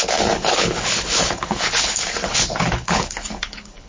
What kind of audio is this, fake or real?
fake